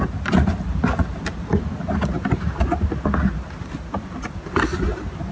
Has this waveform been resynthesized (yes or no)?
no